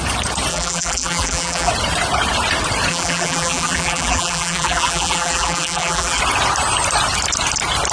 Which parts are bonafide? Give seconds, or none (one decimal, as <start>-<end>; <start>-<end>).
0.0-0.5; 1.7-2.9; 6.2-7.9